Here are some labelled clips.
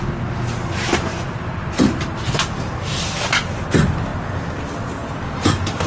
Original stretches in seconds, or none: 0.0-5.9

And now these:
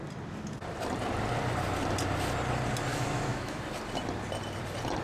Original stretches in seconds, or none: 0.0-2.9; 3.6-5.0

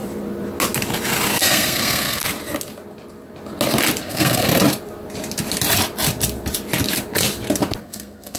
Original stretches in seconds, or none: 0.0-1.4; 2.2-4.0; 4.5-7.8

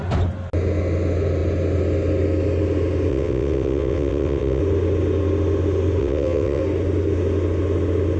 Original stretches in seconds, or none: 0.0-3.1; 4.6-6.0; 6.6-8.2

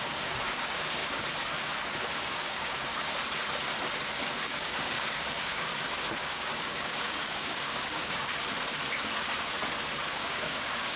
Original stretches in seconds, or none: 1.0-2.0; 2.9-4.4; 5.7-6.2; 8.3-10.1

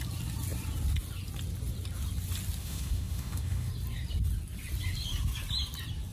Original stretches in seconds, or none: 0.0-2.6; 3.7-6.1